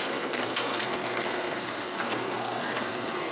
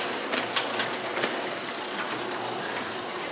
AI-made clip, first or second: first